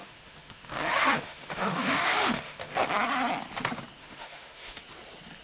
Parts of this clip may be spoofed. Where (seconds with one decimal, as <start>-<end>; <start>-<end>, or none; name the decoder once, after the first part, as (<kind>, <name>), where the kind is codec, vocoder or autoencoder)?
0.0-2.9 (autoencoder, DAC-VAE); 4.0-4.8